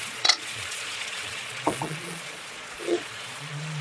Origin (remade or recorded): remade